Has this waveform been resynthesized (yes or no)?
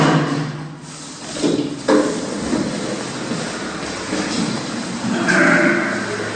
no